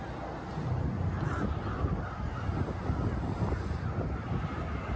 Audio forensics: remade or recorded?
recorded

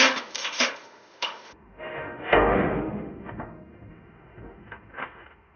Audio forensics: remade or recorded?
remade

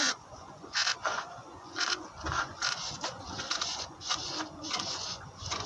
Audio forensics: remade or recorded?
remade